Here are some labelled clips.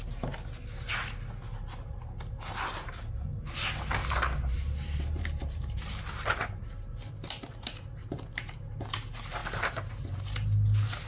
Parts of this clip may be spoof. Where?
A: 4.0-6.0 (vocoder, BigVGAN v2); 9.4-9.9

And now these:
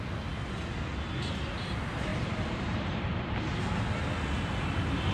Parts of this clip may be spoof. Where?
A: 2.1-3.6 (vocoder, BigVGAN v2)

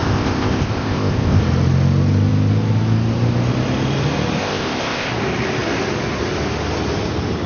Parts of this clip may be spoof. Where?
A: 0.0-1.4 (codec, ZipCodec); 4.4-5.1

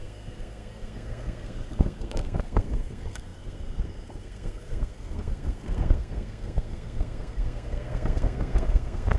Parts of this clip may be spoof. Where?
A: 0.0-9.2 (codec, SNAC)